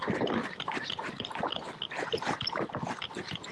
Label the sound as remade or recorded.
recorded